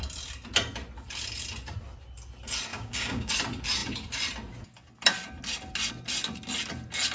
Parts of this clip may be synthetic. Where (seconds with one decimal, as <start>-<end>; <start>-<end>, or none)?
2.7-3.3